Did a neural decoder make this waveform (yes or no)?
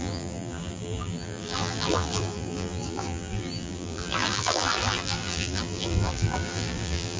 yes